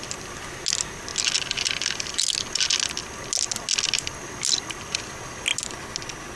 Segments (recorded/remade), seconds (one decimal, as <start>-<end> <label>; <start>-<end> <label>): 0.0-6.4 recorded